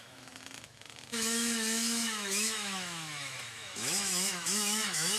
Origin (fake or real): fake